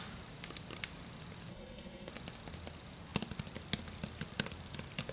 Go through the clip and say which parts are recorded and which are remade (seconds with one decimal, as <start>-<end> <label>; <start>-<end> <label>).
0.0-1.5 recorded; 1.5-2.1 remade; 2.1-5.1 recorded